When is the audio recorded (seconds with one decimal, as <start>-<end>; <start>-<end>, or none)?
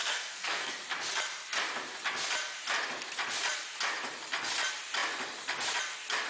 0.7-6.3